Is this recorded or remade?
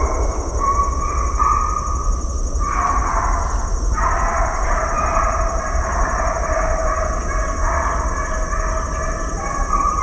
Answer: recorded